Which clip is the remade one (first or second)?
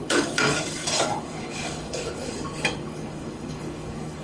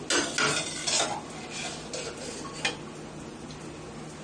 first